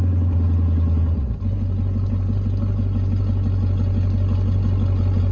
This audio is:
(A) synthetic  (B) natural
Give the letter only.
B